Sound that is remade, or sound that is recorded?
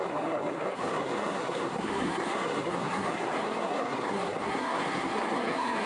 remade